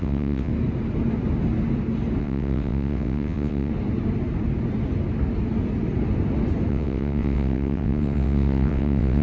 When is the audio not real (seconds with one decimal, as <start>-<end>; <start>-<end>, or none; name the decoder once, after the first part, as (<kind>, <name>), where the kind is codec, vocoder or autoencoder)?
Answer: 0.0-0.5 (vocoder, WaveNeXt); 2.2-3.7; 6.7-9.2

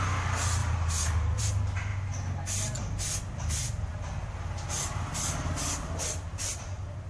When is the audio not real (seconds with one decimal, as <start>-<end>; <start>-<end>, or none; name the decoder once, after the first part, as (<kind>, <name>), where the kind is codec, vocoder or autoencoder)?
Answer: none

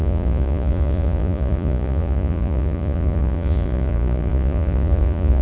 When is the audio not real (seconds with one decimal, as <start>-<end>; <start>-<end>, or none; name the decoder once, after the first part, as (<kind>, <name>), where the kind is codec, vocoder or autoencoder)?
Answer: 0.0-5.4 (vocoder, Vocos)